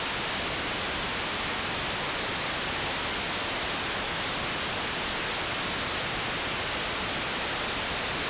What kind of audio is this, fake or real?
real